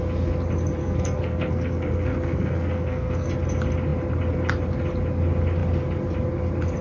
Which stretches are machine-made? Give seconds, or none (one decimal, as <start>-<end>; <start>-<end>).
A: 0.8-3.3